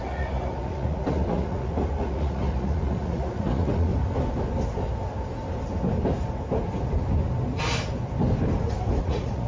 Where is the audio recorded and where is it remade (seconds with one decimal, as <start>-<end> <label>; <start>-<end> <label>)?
0.0-3.9 remade; 3.9-9.0 recorded; 9.0-9.5 remade